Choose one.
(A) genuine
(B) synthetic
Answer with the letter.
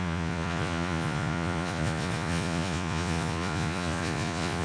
B